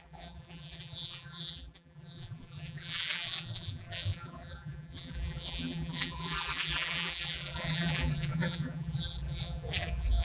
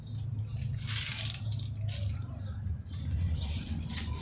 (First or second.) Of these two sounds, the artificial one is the first